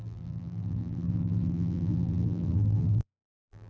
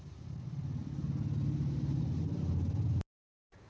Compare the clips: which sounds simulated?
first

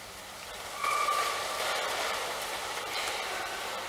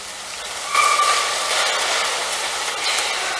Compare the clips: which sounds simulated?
first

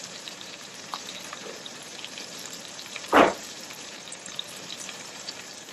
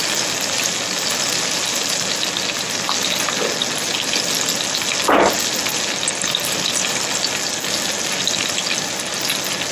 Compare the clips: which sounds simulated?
first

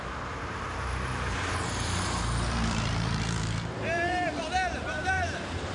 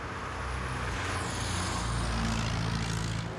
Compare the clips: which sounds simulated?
first